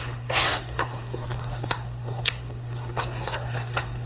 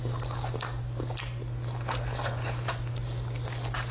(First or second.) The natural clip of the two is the second